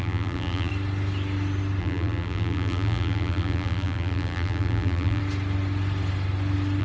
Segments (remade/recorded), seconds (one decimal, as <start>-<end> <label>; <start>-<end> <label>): 0.0-0.7 remade; 0.7-1.8 recorded; 1.8-5.2 remade; 5.2-6.8 recorded